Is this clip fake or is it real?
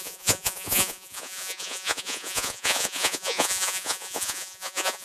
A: fake